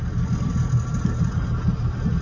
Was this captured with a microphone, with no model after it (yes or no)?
yes